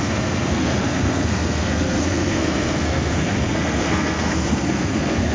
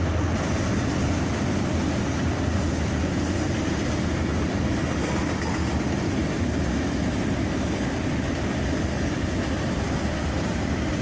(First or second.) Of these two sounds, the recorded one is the second